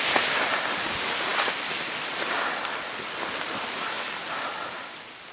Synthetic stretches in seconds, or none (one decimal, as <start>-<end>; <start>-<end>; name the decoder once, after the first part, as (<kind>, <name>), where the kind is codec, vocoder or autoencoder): none